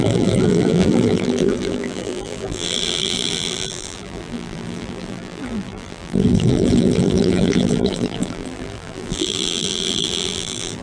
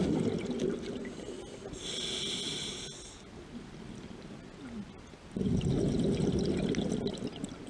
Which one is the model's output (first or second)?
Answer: first